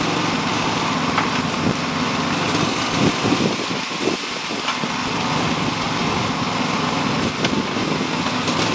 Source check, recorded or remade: recorded